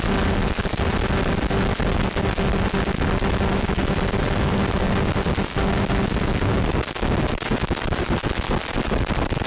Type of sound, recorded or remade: recorded